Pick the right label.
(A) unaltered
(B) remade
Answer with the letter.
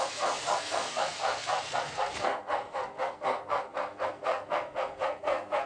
B